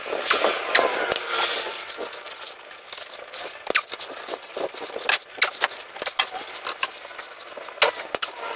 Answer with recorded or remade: recorded